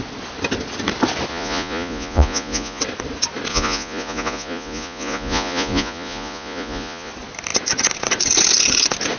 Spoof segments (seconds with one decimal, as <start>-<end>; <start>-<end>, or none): 1.3-2.8; 3.5-7.1